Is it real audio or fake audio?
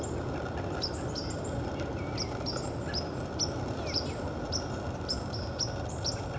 real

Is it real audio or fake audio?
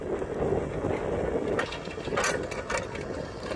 real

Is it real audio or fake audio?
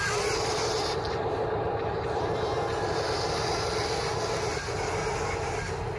real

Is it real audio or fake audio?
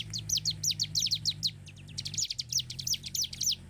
real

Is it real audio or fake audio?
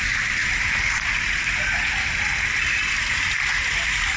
real